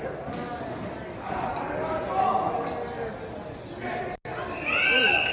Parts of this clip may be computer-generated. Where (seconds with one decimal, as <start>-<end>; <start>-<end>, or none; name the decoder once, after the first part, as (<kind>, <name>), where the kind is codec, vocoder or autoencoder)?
none